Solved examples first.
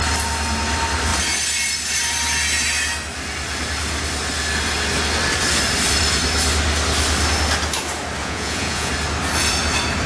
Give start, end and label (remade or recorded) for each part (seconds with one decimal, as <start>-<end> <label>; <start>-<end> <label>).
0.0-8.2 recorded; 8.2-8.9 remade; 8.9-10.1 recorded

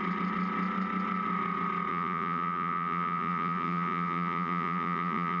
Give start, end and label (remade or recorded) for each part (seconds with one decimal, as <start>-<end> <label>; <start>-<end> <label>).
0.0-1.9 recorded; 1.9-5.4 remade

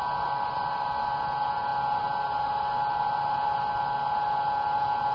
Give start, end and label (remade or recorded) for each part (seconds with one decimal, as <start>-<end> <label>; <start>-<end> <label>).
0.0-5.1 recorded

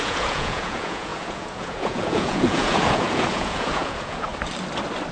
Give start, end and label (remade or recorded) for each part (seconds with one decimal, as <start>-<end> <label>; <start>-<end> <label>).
0.0-4.3 remade; 4.3-5.1 recorded

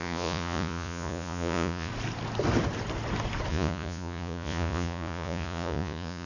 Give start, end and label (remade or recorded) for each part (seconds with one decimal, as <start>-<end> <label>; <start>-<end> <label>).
0.0-1.9 remade; 1.9-3.5 recorded; 3.5-6.3 remade

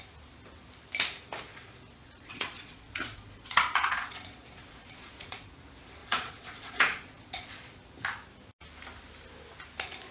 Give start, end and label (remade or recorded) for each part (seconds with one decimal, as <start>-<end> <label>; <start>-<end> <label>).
0.0-1.5 recorded; 1.5-5.5 remade; 5.5-6.0 recorded; 6.0-7.8 remade; 7.8-10.1 recorded